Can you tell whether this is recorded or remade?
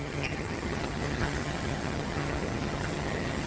remade